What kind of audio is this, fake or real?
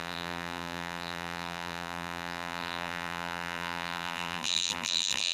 fake